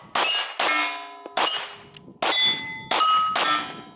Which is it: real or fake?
real